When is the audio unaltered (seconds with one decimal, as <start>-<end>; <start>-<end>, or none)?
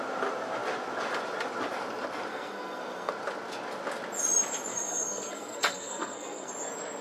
0.0-2.3; 3.1-4.7; 6.5-7.0